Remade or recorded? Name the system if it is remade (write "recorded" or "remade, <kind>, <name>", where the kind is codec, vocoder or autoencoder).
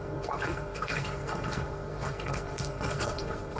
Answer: remade, codec, SNAC